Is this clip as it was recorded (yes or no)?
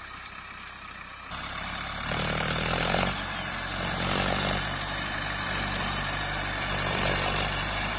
no